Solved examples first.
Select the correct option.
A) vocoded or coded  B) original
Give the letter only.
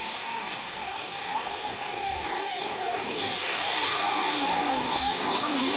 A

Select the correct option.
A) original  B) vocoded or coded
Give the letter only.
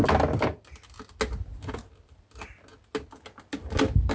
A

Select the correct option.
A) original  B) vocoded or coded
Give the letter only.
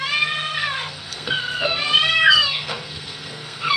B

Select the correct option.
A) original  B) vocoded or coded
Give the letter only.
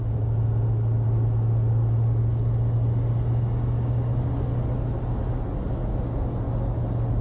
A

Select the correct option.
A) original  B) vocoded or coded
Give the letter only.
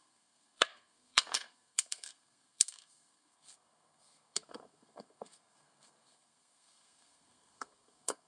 B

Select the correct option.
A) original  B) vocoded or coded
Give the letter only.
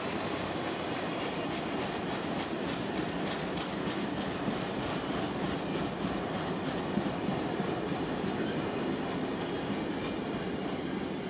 A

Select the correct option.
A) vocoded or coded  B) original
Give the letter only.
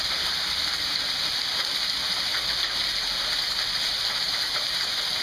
B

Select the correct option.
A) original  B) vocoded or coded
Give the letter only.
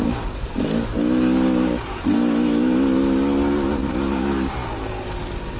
A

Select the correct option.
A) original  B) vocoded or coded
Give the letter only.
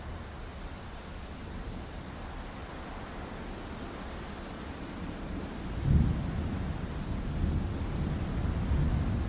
A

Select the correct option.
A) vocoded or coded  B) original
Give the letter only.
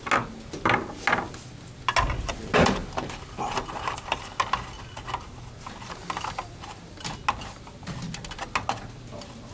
B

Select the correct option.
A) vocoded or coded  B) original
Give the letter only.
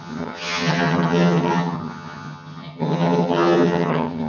A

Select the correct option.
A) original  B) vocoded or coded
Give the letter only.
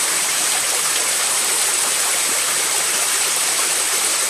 B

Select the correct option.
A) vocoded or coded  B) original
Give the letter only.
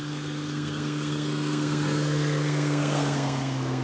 A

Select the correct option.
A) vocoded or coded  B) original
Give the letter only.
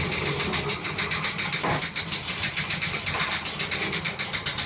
B